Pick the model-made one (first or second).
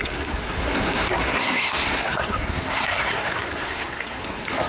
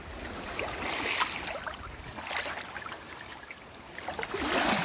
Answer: first